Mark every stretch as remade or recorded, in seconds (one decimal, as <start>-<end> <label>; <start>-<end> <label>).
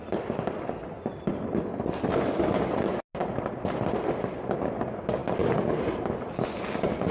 0.0-7.1 recorded